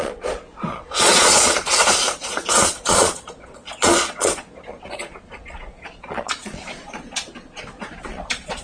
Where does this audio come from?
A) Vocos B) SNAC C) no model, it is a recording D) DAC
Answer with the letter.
A